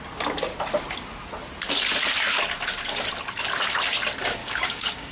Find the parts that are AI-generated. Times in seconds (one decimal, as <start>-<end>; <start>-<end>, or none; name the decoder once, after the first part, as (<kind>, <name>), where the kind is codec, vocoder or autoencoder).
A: 4.4-5.1 (codec, DAC)